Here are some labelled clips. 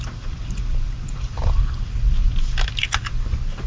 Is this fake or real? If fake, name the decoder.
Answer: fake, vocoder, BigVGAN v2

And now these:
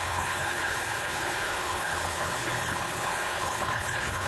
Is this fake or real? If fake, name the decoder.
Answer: fake, codec, HILCodec